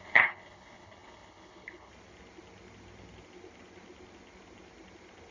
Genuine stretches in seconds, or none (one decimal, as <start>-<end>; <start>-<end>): 1.9-5.3